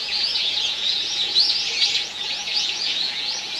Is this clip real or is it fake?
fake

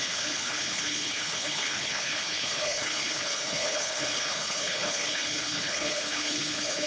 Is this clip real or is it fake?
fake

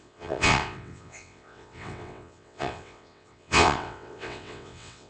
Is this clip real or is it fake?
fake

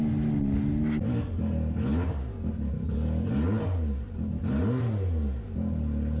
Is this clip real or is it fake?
real